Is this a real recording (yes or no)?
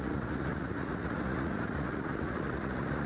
no